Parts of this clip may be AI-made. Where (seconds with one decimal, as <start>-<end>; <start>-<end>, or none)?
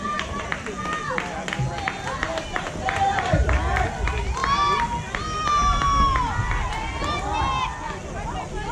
2.2-3.6